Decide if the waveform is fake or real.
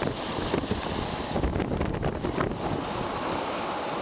real